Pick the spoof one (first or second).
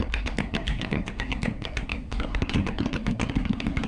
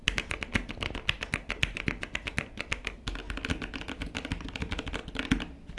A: first